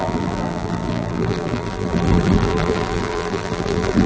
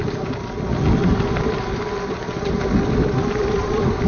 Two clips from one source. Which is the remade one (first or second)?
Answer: first